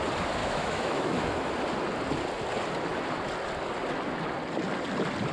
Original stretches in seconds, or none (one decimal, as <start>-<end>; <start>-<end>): 0.0-0.4; 1.5-5.3